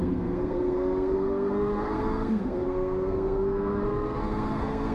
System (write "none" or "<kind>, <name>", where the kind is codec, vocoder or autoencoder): codec, SNAC